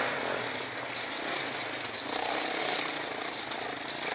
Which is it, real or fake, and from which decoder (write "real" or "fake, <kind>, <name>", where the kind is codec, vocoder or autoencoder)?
real